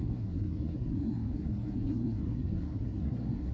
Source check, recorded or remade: remade